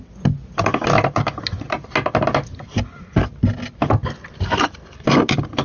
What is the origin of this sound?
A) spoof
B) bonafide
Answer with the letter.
B